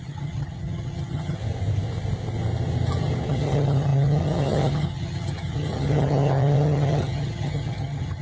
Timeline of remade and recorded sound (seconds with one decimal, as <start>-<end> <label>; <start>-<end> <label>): 0.0-1.4 remade; 1.4-3.3 recorded; 3.3-8.2 remade